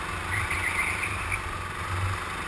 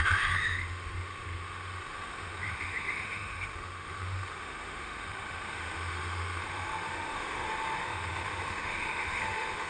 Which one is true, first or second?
first